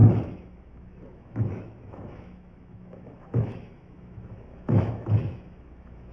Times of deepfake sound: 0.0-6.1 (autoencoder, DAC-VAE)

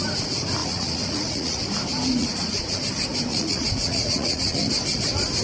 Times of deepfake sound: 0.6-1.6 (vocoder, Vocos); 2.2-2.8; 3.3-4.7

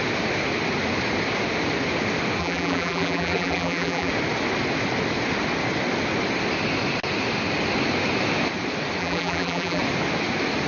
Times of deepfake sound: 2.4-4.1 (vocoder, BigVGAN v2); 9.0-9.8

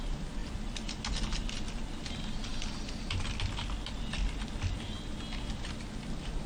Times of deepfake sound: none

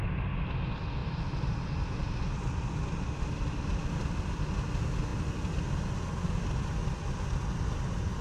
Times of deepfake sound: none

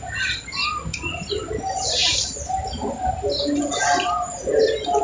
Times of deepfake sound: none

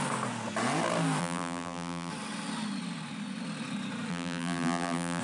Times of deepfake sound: 1.2-2.1 (vocoder, BigVGAN v2); 4.1-5.2

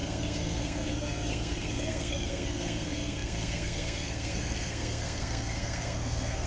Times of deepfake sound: 0.0-6.5 (codec, SNAC)